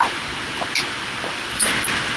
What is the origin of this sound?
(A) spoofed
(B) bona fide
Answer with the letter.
B